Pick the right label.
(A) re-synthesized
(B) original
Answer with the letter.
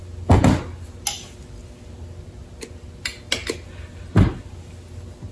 B